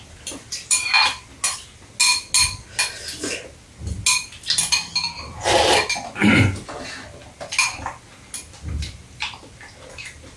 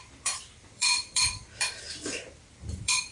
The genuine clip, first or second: first